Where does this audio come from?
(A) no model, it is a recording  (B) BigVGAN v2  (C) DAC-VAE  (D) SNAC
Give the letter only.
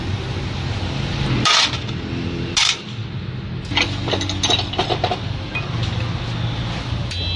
A